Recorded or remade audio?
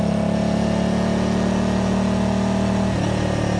recorded